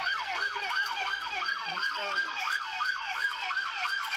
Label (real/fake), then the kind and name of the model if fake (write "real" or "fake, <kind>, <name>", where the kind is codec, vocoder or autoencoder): fake, codec, SNAC